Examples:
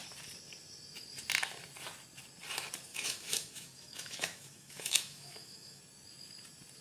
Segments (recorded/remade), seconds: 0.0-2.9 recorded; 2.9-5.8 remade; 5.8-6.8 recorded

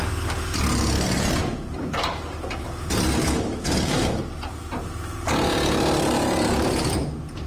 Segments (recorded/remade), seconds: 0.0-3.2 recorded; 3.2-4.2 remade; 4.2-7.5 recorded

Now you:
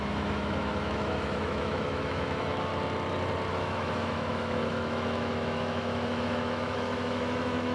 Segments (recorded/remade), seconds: 0.0-2.7 remade; 2.7-3.5 recorded; 3.5-7.7 remade